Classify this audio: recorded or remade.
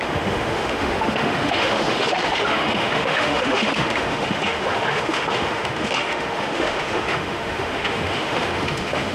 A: remade